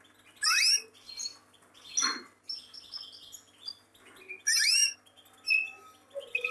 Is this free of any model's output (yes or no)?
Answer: yes